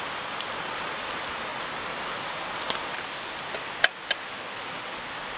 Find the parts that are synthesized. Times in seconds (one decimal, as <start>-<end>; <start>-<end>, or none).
none